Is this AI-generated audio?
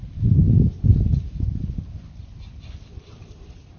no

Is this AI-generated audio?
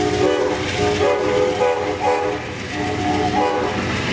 no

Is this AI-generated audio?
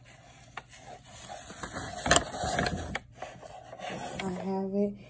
no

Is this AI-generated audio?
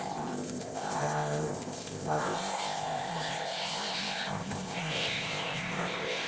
yes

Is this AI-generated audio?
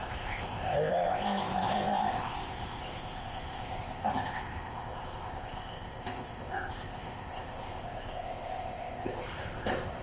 yes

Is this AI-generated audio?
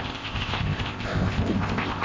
yes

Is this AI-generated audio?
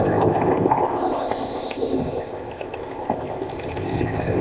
yes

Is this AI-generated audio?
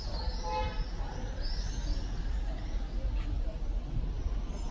no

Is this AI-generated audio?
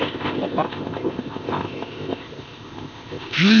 yes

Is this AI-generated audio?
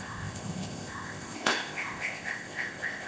yes